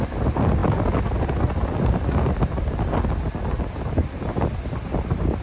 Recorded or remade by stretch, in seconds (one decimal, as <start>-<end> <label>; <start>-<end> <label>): 0.0-5.4 recorded

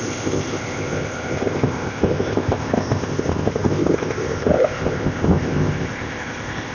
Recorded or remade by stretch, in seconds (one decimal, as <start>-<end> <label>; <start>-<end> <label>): 0.0-6.7 remade

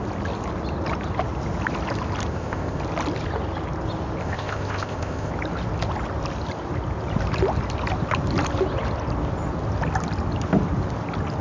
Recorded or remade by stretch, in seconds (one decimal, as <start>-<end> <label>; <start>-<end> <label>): 0.0-2.3 recorded; 2.3-2.8 remade; 2.8-4.2 recorded; 4.2-5.3 remade; 5.3-11.4 recorded

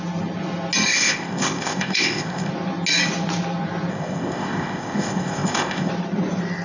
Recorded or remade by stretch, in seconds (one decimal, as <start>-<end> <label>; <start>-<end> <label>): 0.0-0.9 recorded; 0.9-2.5 remade; 2.5-3.9 recorded; 3.9-5.9 remade; 5.9-6.6 recorded

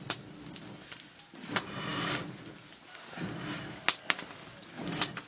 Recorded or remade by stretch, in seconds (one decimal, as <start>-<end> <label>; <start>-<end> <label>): 0.0-5.3 recorded

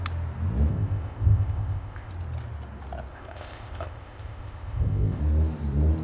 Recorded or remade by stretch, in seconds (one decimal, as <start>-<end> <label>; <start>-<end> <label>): 0.0-0.7 recorded; 0.7-2.1 remade; 2.1-3.1 recorded; 3.1-5.2 remade; 5.2-6.0 recorded